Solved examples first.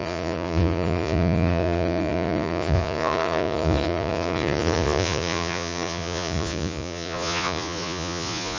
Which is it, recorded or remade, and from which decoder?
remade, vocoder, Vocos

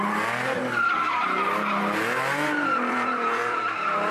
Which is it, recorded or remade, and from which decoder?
remade, vocoder, BigVGAN v2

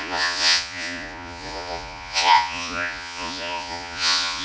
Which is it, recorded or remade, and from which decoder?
remade, vocoder, Vocos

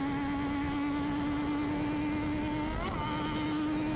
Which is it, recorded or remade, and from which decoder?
recorded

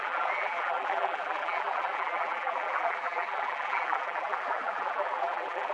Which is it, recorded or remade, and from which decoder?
remade, vocoder, BigVGAN v2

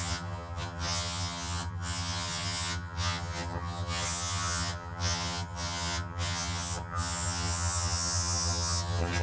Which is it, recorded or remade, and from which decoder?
remade, vocoder, HiFi-GAN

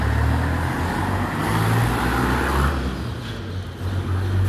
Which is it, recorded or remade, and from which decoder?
recorded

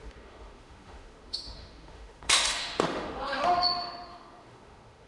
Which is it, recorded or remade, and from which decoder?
remade, autoencoder, DAC-VAE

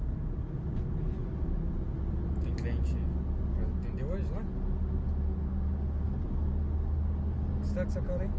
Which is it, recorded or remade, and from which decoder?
recorded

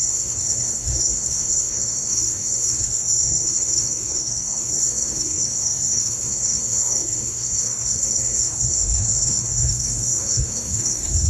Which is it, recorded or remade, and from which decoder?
remade, codec, SNAC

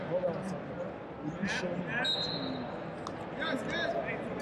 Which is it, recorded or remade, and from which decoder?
recorded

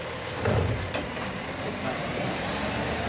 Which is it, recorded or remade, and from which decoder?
remade, vocoder, BigVGAN v2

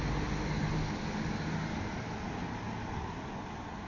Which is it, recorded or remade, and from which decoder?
recorded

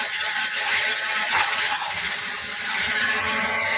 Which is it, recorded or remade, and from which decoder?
remade, vocoder, HiFi-GAN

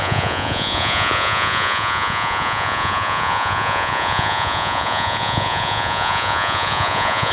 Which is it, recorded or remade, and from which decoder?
remade, vocoder, Vocos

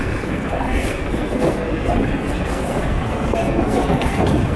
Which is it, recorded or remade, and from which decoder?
remade, codec, SNAC